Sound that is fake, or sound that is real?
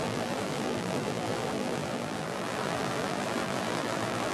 fake